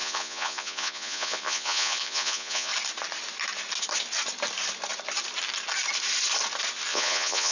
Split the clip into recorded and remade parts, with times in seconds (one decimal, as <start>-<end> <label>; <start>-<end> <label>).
0.0-2.7 remade; 2.7-6.9 recorded; 6.9-7.5 remade